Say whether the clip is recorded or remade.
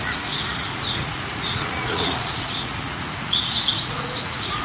remade